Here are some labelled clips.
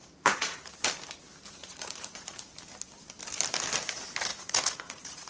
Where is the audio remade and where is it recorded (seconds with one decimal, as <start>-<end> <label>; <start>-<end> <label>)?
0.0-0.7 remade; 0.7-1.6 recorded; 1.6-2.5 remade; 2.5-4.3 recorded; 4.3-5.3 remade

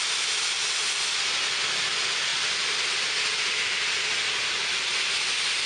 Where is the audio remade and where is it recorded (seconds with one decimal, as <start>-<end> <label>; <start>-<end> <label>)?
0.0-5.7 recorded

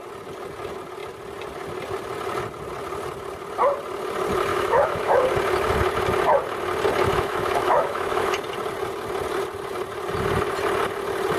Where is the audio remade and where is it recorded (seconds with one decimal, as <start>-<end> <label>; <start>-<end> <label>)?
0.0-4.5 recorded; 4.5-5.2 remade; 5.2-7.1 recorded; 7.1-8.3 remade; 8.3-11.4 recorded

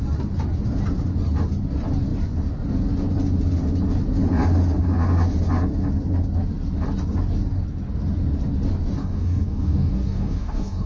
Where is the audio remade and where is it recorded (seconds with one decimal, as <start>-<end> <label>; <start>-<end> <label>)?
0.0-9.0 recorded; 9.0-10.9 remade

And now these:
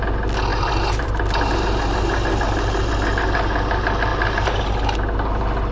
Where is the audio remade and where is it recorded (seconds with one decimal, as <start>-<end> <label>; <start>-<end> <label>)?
0.0-0.5 recorded; 0.5-2.9 remade; 2.9-4.1 recorded; 4.1-4.7 remade; 4.7-5.7 recorded

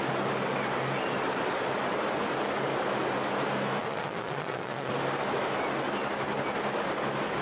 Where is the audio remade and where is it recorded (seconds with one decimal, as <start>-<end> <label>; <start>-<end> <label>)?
0.0-3.8 recorded; 3.8-4.9 remade; 4.9-7.4 recorded

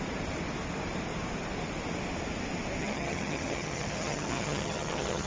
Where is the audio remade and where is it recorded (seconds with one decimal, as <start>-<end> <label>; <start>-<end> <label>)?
0.0-2.8 recorded; 2.8-5.3 remade